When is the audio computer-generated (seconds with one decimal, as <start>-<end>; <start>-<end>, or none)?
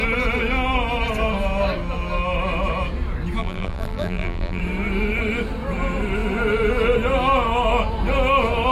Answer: 3.4-4.6